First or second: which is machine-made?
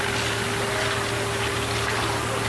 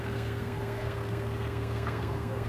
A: second